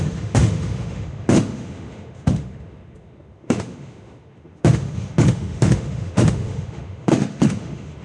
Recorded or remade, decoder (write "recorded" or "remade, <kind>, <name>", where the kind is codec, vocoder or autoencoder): remade, autoencoder, DAC-VAE